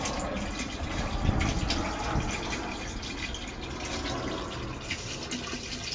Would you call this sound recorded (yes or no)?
yes